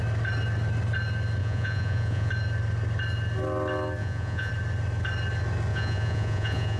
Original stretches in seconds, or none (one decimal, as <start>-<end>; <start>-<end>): 0.0-1.4; 2.3-4.0; 4.5-5.7